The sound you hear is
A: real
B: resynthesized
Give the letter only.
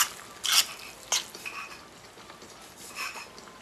A